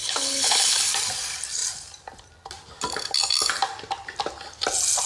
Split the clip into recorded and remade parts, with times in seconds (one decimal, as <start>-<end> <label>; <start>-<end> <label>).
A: 0.0-0.9 remade; 0.9-5.1 recorded

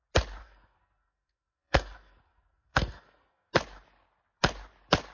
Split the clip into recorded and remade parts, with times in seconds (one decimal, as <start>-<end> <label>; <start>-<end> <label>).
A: 0.0-0.4 recorded; 0.4-3.5 remade; 3.5-5.1 recorded